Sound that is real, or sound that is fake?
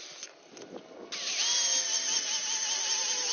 real